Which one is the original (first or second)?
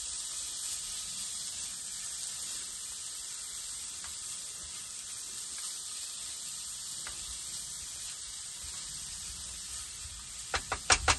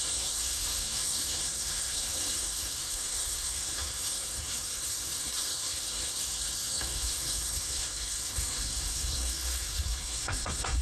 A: first